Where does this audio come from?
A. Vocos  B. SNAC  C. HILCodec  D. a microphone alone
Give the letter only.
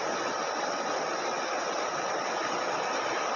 D